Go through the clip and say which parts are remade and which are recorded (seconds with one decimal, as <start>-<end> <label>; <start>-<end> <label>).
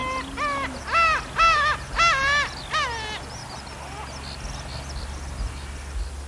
0.0-6.3 recorded